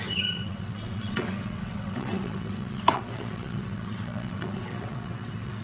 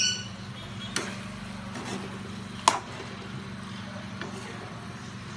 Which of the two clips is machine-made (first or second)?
first